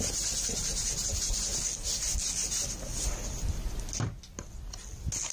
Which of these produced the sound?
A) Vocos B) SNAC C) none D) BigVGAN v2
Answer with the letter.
C